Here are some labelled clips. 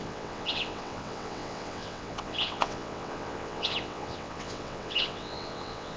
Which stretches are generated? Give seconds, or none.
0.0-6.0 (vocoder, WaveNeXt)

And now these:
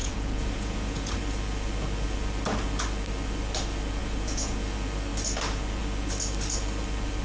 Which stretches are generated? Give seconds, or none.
0.0-1.2 (vocoder, Vocos); 4.0-4.6